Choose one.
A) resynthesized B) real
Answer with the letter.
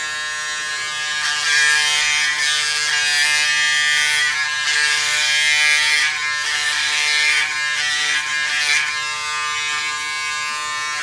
B